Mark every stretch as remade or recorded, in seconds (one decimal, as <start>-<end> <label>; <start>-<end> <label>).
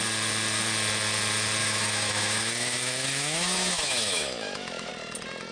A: 0.0-1.6 recorded; 1.6-4.9 remade; 4.9-5.5 recorded